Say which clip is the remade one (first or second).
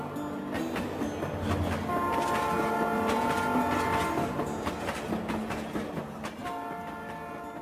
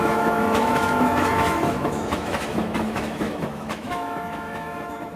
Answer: second